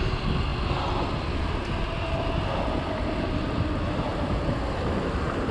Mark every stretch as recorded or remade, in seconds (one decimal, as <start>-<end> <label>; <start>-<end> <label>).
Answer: 0.0-5.5 recorded